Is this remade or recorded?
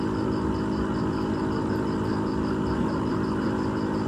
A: recorded